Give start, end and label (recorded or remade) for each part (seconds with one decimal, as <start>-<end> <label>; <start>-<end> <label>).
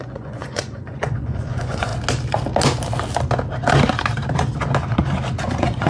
0.0-1.9 remade; 1.9-5.4 recorded; 5.4-5.9 remade